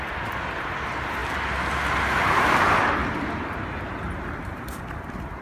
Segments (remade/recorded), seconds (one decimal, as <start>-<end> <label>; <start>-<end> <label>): 0.0-5.4 recorded